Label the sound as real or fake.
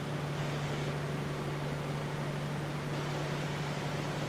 real